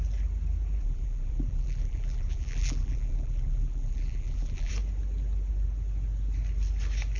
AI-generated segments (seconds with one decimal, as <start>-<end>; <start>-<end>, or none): 0.8-4.7